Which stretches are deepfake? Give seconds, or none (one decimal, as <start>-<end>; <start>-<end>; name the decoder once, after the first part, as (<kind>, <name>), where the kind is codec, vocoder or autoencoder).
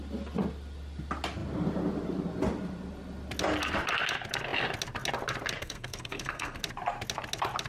5.6-6.6 (codec, SNAC)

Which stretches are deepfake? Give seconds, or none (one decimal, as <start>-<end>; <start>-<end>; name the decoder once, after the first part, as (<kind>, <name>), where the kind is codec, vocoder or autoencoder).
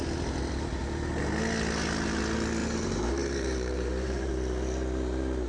2.6-4.3 (vocoder, BigVGAN v2)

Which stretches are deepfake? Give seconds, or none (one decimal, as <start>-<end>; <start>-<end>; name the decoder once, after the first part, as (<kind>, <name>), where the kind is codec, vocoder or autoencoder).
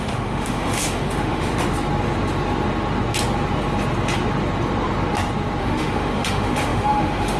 0.0-1.5 (autoencoder, DAC-VAE); 5.6-7.4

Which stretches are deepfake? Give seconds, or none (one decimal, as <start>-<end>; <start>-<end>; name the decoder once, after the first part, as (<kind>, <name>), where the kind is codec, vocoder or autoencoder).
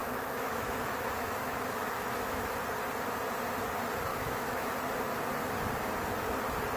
0.0-2.6 (autoencoder, DAC-VAE); 4.1-4.7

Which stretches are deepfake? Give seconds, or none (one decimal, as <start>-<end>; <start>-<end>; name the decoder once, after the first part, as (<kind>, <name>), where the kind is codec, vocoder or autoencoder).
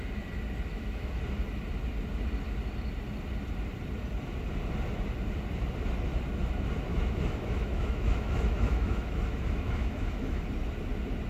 0.7-1.2 (autoencoder, DAC-VAE); 6.9-10.4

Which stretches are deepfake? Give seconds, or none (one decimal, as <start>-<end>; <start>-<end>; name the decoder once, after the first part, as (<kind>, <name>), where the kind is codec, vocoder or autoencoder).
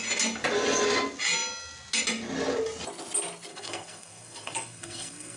3.5-5.4 (codec, SNAC)